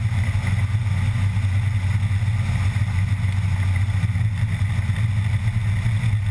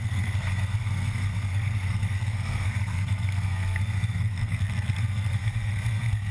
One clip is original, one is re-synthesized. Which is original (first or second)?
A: first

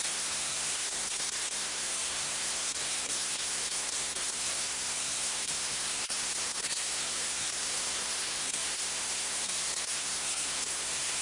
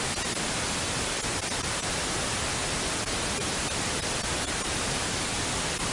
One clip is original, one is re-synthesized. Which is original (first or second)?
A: second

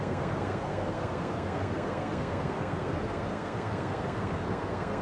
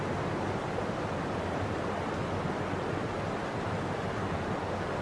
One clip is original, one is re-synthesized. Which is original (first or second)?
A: second